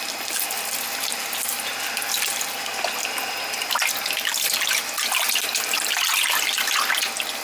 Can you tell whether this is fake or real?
real